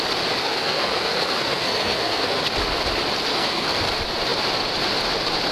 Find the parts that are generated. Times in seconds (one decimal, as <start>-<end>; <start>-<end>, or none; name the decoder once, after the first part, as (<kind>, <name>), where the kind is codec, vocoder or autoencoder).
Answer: 0.4-2.4 (codec, SNAC); 3.3-3.8